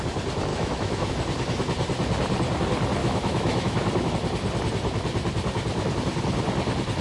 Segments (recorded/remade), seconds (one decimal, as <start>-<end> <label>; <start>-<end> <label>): 0.0-0.5 recorded; 0.5-1.1 remade; 1.1-3.0 recorded; 3.0-4.1 remade; 4.1-7.0 recorded

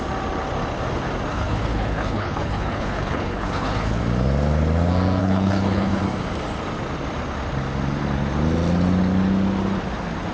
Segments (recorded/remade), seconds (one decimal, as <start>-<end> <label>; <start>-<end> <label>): 0.0-1.3 recorded; 1.3-4.0 remade; 4.0-5.2 recorded; 5.2-6.0 remade; 6.0-10.3 recorded

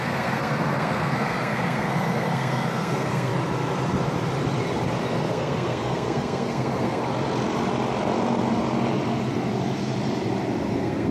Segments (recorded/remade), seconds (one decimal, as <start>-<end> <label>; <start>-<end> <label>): 0.0-3.3 remade; 3.3-5.3 recorded; 5.3-7.0 remade; 7.0-10.7 recorded; 10.7-11.1 remade

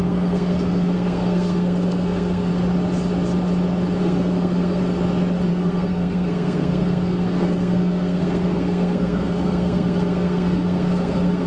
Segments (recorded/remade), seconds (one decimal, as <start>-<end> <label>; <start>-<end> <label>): 0.0-2.5 remade; 2.5-4.0 recorded; 4.0-4.8 remade; 4.8-5.5 recorded; 5.5-11.5 remade

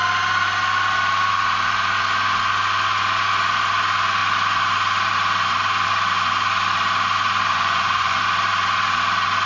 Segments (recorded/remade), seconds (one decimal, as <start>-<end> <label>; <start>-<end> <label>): 0.0-7.5 recorded; 7.5-8.2 remade; 8.2-9.5 recorded

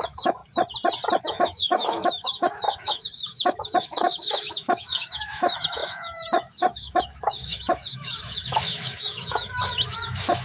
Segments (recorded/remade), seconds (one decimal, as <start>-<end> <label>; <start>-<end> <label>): 0.0-0.4 remade; 0.4-1.2 recorded; 1.2-10.4 remade

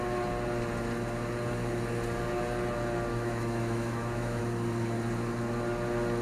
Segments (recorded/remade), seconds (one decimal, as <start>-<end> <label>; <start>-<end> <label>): 0.0-3.1 recorded; 3.1-4.4 remade; 4.4-6.2 recorded